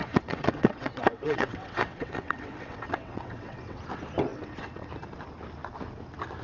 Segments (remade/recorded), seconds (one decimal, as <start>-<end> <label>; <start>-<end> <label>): 0.0-3.8 remade; 3.8-4.3 recorded; 4.3-4.9 remade; 4.9-6.4 recorded